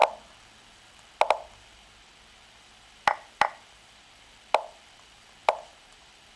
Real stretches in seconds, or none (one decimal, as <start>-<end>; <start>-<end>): 0.0-6.4